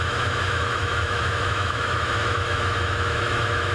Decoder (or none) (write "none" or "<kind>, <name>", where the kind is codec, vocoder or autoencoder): autoencoder, DAC-VAE